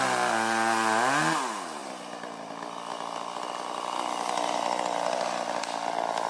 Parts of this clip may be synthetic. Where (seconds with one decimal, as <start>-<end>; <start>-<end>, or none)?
none